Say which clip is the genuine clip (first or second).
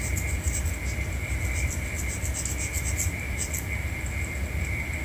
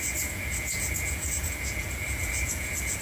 first